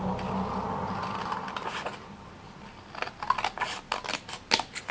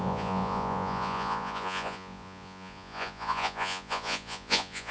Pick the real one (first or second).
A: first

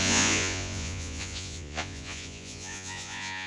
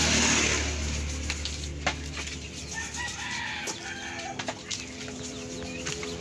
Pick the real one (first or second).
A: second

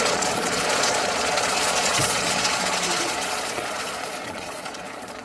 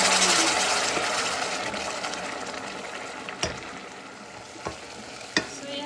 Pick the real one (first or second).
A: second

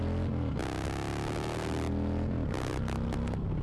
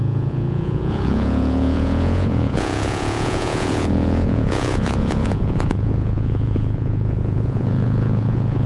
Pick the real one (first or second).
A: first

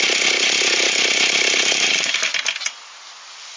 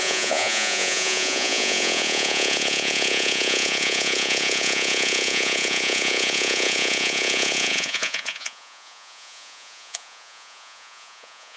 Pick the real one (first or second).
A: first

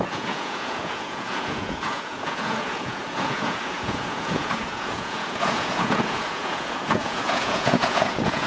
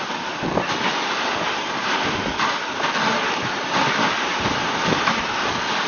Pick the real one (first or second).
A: second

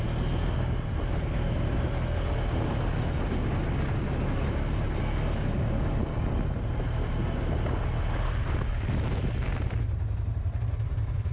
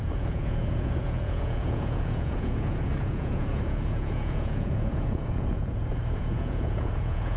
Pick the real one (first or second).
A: first